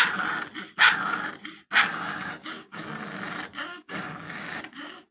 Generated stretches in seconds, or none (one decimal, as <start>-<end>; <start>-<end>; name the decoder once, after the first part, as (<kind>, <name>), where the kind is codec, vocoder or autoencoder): 1.9-2.8 (codec, DAC); 3.7-4.6